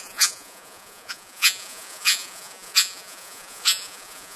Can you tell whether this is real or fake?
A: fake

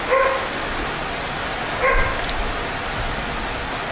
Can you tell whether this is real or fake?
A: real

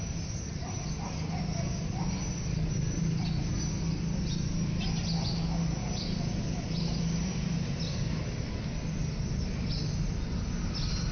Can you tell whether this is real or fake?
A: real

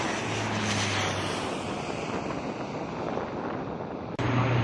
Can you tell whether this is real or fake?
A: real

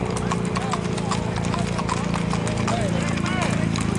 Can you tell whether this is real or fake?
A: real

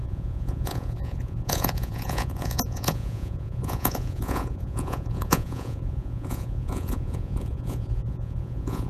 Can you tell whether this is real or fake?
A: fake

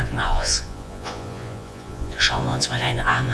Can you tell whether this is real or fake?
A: fake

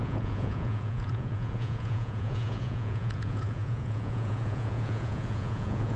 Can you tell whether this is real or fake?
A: fake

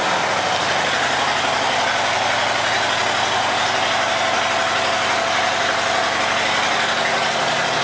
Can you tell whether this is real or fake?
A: real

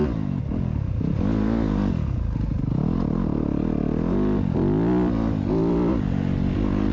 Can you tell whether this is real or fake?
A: real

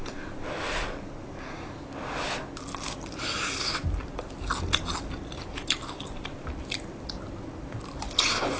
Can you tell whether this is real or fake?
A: real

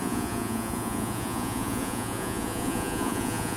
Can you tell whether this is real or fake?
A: fake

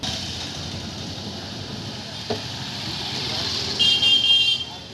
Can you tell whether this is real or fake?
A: real